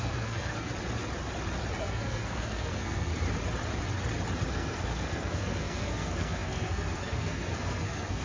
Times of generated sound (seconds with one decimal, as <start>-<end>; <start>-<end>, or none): 0.0-0.7; 1.8-3.1; 4.5-8.2